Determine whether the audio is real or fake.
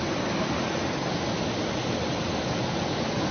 real